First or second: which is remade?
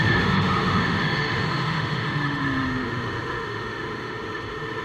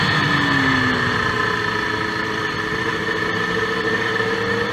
first